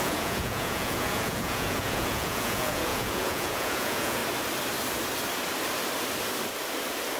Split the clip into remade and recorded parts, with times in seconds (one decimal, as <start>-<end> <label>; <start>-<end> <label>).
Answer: 0.0-4.2 remade; 4.2-7.2 recorded